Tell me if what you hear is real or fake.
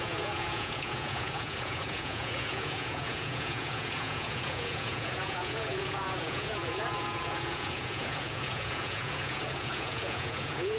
fake